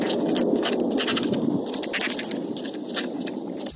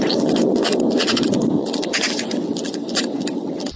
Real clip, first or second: first